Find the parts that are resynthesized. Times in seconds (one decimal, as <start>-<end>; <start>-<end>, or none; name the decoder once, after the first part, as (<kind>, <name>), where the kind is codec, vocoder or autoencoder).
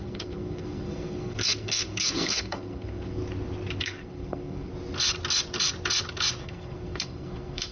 0.0-3.2 (codec, SNAC); 3.8-4.7; 6.4-7.7